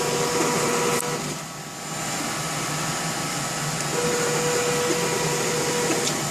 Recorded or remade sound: recorded